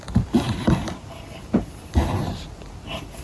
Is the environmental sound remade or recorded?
recorded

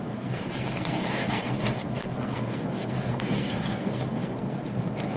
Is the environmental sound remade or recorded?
remade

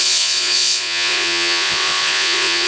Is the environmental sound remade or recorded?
remade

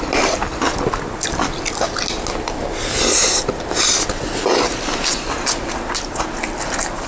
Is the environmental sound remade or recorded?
recorded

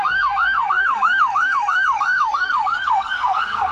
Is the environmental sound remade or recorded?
remade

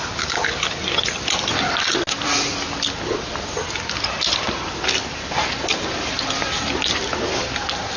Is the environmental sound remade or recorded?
recorded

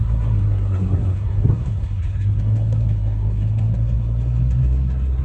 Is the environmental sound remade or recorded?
remade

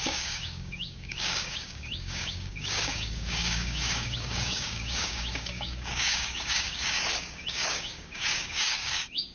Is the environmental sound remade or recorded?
remade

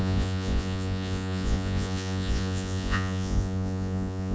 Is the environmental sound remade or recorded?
remade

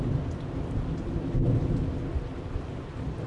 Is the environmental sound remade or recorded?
recorded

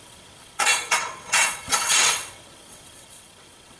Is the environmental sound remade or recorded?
remade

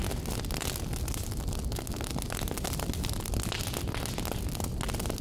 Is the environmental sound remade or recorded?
recorded